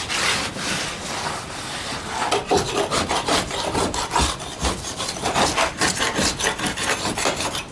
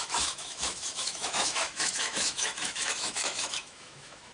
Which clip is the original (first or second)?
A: first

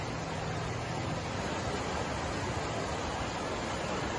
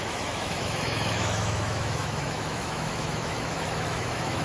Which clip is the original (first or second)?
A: first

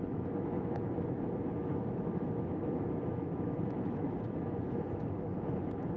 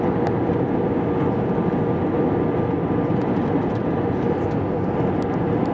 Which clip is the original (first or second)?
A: second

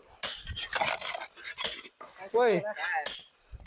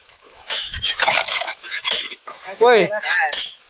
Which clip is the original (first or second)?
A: first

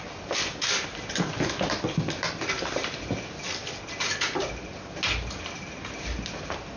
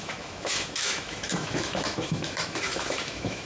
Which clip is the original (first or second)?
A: first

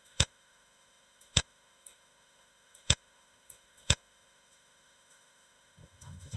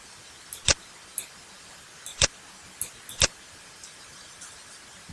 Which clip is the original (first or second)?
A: second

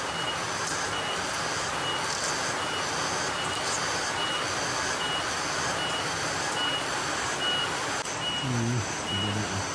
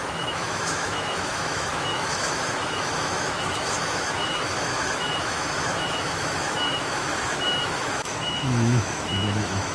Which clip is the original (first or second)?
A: first